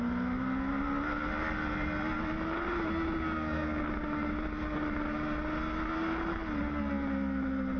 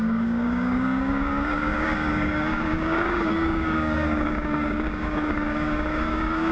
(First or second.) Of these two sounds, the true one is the first